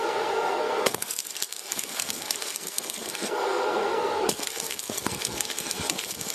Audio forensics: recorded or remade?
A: remade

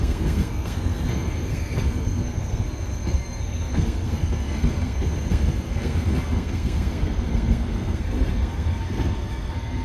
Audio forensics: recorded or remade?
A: remade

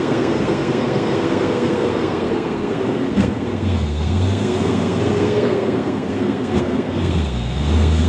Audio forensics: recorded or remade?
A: remade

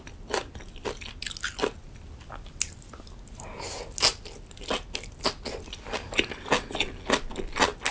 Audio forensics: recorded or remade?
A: recorded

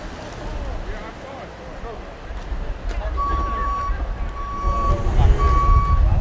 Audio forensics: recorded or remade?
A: recorded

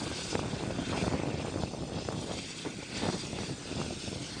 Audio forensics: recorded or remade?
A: recorded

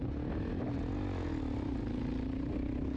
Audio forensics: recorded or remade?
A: recorded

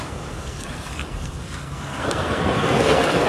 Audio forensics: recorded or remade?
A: remade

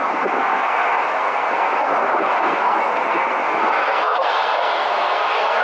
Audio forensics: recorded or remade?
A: remade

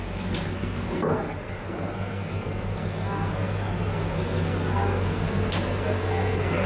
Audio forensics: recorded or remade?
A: remade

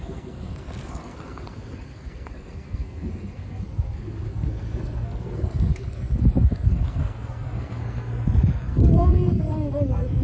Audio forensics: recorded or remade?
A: remade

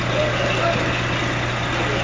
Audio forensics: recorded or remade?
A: recorded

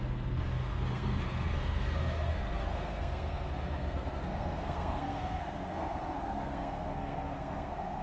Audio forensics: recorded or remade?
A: remade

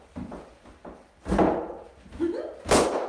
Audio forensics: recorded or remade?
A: recorded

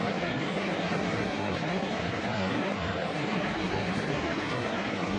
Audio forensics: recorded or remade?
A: remade